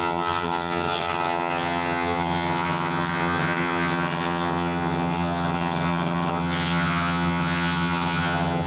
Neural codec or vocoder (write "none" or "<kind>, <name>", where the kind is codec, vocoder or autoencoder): vocoder, HiFi-GAN